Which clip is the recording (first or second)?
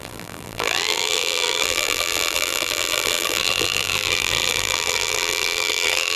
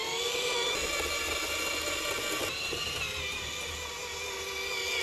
second